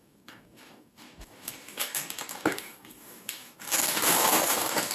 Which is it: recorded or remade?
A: remade